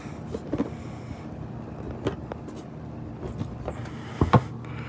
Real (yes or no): yes